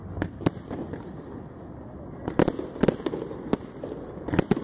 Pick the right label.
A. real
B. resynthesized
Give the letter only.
A